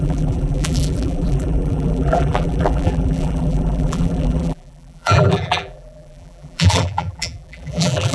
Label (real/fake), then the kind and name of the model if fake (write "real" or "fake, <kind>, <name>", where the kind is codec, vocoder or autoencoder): fake, vocoder, BigVGAN v2